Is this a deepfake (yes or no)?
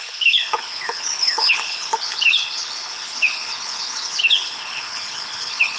yes